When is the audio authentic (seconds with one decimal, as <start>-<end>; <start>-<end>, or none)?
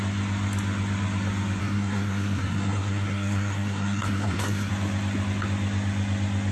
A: 0.0-1.6; 4.7-6.5